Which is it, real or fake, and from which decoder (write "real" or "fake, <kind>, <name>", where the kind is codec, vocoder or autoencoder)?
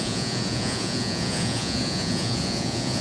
fake, vocoder, Vocos